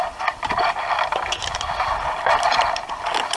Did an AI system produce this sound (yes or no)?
no